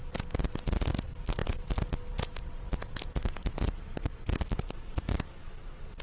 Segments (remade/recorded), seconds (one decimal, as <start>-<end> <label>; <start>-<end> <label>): 0.0-6.0 recorded